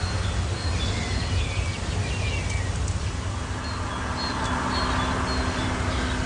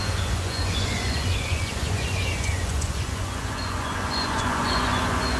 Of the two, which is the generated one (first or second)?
second